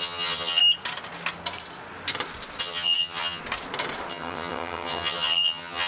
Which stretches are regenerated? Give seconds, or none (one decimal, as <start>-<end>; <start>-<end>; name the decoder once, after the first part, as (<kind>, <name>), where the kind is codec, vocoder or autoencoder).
0.0-0.6 (vocoder, HiFi-GAN); 2.6-3.4; 4.1-5.9